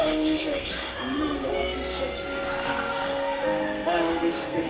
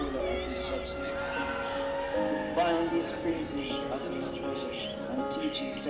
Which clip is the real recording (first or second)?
second